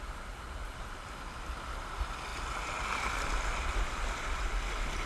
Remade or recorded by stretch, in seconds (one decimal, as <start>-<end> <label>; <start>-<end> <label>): 0.0-5.1 recorded